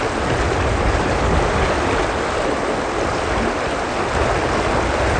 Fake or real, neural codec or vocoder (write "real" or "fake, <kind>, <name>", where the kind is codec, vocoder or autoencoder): real